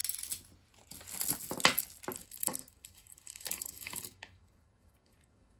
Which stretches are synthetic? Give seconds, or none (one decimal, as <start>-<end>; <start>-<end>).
2.2-5.6